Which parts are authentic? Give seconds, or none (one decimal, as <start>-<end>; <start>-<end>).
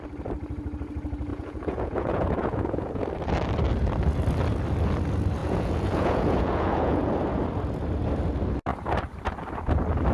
0.0-1.3; 3.0-5.4; 7.1-10.1